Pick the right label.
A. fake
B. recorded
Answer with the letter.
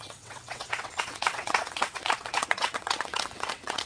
A